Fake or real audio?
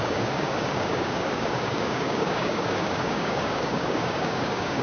fake